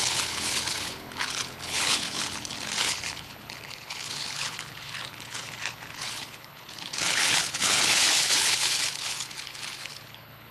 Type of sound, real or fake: fake